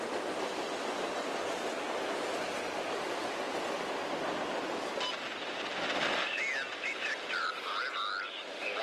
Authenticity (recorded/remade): recorded